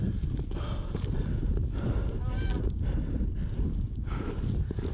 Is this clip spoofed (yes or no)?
no